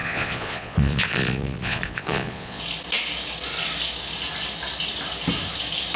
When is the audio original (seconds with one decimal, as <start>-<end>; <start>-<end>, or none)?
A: 2.6-6.0